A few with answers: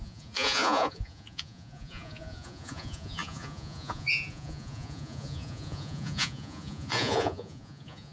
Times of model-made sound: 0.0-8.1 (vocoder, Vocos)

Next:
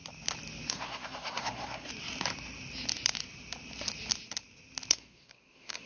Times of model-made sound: 0.7-1.9 (codec, SNAC); 4.9-5.9

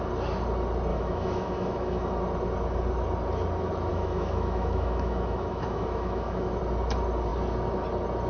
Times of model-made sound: 0.9-2.1 (autoencoder, DAC-VAE); 3.9-6.6

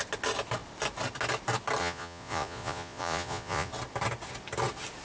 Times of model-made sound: 1.8-3.7 (vocoder, Vocos)

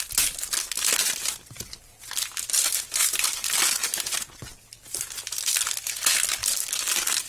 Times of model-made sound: none

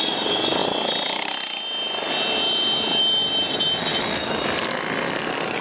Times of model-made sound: 3.9-4.7 (vocoder, BigVGAN v2)

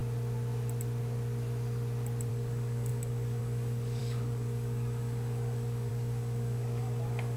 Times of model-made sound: 2.3-7.4 (codec, DAC)

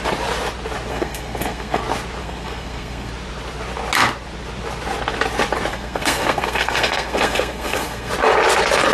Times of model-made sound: 0.9-1.8 (codec, SNAC); 2.2-3.1; 5.7-8.1